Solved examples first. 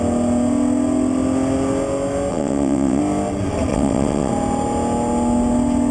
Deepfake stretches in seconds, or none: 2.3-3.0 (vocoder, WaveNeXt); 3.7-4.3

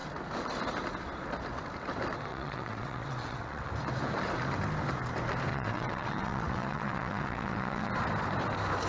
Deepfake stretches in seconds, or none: 2.3-3.7 (vocoder, WaveNeXt); 5.5-7.9

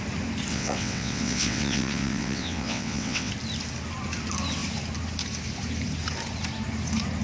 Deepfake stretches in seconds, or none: 0.5-3.3 (vocoder, WaveNeXt)

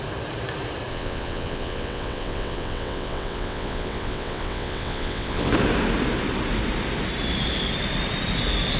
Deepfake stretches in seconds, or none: 0.9-5.5 (vocoder, WaveNeXt)

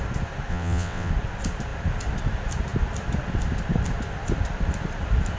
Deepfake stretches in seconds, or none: 0.5-1.1 (vocoder, WaveNeXt)

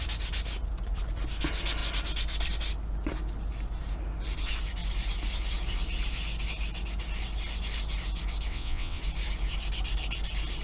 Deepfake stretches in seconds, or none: 8.5-9.0 (vocoder, WaveNeXt)

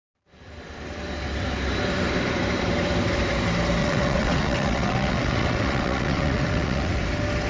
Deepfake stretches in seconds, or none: 3.8-7.0 (vocoder, WaveNeXt)